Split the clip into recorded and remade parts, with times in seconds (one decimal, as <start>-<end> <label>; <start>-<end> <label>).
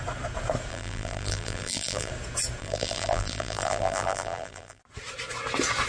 0.0-0.7 recorded; 0.7-2.1 remade; 2.1-2.6 recorded; 2.6-4.8 remade; 4.8-5.9 recorded